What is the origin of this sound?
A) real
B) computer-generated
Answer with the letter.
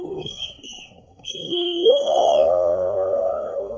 B